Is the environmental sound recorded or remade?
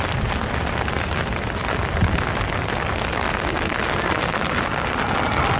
recorded